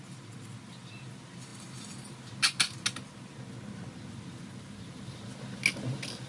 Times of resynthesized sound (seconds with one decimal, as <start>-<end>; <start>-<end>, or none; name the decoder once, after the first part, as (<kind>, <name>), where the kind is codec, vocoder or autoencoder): none